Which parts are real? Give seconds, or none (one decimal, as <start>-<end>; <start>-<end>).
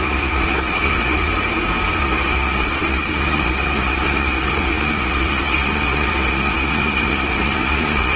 1.3-2.0